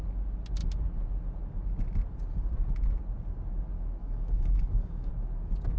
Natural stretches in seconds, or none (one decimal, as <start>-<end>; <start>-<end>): 0.0-4.0; 5.1-5.8